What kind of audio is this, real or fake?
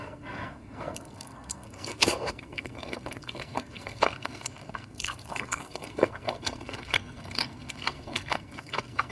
fake